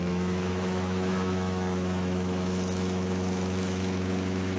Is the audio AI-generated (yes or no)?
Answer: yes